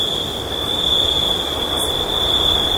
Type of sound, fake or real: fake